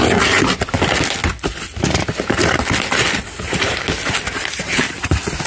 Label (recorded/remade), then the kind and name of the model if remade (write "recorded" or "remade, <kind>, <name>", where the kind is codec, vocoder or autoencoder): recorded